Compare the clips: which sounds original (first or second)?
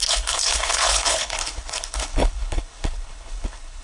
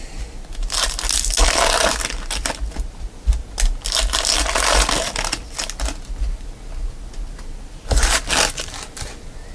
second